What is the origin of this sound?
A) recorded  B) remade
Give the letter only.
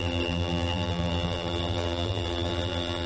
B